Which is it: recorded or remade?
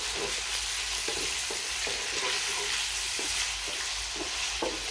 recorded